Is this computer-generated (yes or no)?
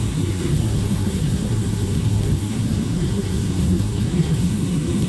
yes